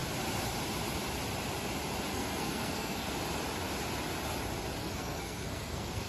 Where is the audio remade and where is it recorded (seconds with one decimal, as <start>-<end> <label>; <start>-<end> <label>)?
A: 0.0-2.1 recorded; 2.1-3.1 remade; 3.1-4.8 recorded; 4.8-6.1 remade